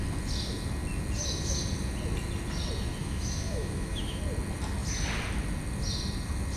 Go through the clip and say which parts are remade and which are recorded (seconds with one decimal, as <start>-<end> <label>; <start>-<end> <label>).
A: 0.0-3.0 recorded; 3.0-4.2 remade; 4.2-6.6 recorded